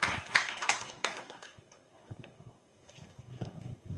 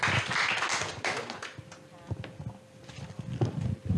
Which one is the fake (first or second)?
first